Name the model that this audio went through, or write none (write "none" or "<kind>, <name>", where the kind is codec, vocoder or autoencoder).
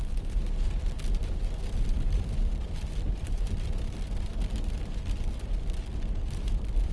vocoder, BigVGAN v2